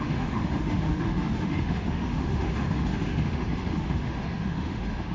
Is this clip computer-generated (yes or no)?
yes